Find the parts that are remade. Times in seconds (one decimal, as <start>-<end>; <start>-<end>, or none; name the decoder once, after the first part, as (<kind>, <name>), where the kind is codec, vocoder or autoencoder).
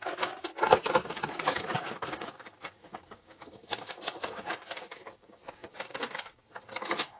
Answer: 0.0-7.2 (codec, DAC)